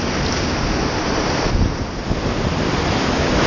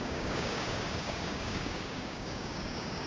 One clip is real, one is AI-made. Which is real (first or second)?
first